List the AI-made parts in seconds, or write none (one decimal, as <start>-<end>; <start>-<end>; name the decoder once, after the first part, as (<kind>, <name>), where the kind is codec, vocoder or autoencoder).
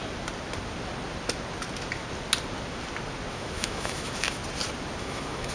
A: 3.3-4.4 (autoencoder, DAC-VAE); 5.0-5.5